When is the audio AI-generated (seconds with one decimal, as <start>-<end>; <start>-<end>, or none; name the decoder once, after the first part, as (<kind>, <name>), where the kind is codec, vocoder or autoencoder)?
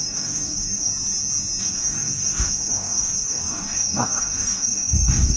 0.0-0.9 (codec, DAC); 1.6-5.4